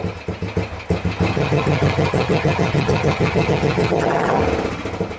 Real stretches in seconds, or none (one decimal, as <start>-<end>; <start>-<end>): 0.0-1.3; 4.4-5.2